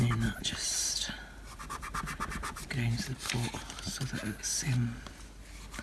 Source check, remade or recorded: recorded